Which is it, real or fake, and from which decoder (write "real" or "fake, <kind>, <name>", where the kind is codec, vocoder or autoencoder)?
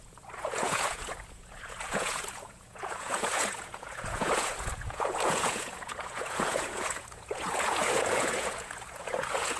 fake, vocoder, Vocos